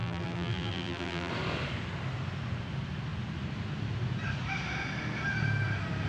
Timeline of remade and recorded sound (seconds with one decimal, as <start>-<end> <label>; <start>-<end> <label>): 0.0-1.3 remade; 1.3-6.1 recorded